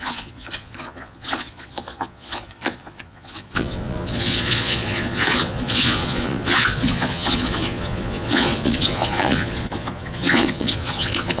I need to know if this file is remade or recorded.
remade